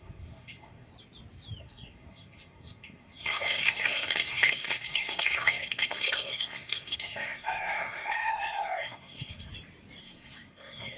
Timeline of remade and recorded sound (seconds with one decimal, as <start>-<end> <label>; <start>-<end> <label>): 0.0-0.9 remade; 0.9-1.6 recorded; 1.6-9.5 remade; 9.5-10.0 recorded; 10.0-11.0 remade